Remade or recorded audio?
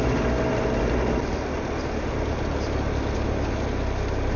recorded